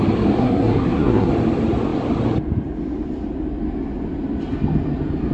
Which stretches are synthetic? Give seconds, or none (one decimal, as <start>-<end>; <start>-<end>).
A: 0.4-1.3